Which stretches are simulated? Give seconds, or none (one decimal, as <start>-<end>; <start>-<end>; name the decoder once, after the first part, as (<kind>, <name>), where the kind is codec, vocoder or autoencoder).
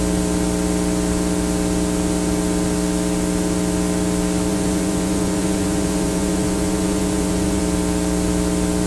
4.5-7.6 (vocoder, Vocos)